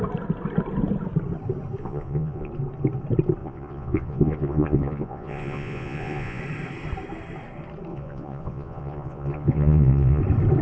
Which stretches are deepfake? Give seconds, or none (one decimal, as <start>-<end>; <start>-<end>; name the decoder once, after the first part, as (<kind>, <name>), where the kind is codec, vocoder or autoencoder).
1.8-2.5 (vocoder, Vocos); 3.4-6.4; 7.9-10.2